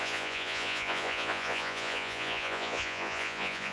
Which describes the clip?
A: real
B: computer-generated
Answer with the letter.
B